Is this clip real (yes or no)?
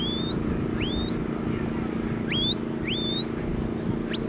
yes